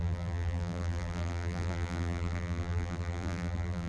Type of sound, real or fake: fake